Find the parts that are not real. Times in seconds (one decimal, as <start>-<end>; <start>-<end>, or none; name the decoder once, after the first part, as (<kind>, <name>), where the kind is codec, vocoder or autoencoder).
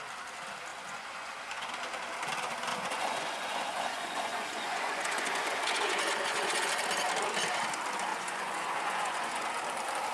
0.7-1.7 (vocoder, Vocos); 2.7-6.7; 8.1-9.5